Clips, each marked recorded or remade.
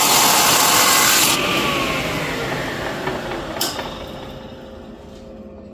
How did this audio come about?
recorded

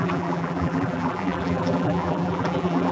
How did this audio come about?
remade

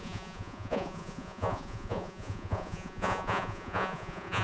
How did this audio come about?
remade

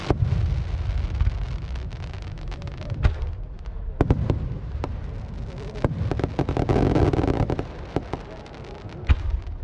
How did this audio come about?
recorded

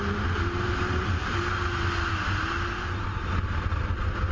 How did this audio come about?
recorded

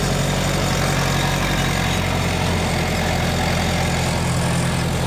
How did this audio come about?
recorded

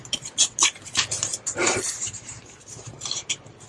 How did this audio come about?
remade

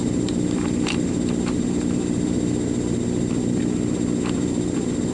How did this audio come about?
recorded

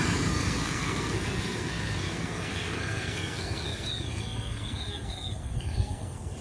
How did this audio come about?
remade